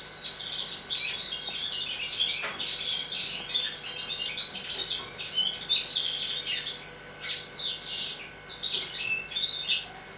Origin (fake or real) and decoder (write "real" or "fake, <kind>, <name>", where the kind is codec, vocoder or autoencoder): real